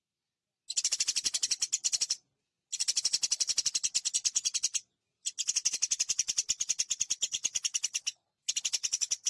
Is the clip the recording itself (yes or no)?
yes